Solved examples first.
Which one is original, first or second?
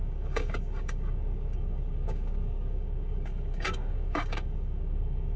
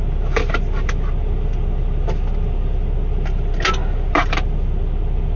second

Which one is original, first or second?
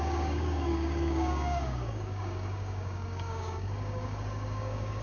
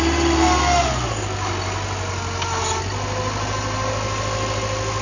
second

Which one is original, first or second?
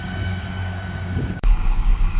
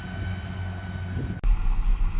second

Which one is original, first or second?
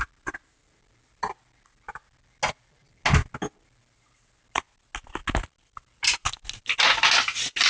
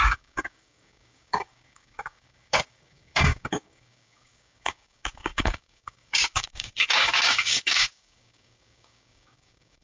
first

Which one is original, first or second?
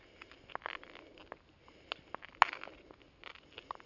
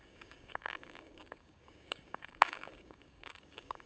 first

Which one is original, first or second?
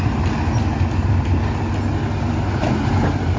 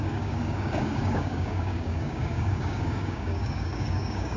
first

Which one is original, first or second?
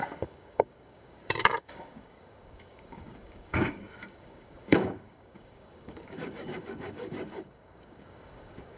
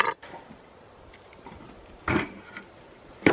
second